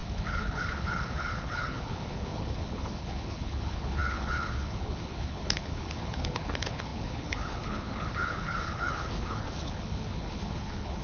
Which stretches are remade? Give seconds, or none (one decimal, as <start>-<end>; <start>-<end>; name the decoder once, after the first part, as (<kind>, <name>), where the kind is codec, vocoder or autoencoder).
0.0-11.0 (codec, HILCodec)